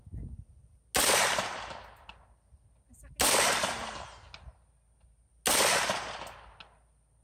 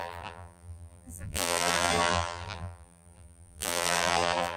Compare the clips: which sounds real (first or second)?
first